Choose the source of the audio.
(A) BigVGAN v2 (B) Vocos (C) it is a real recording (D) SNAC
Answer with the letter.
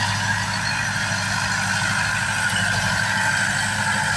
C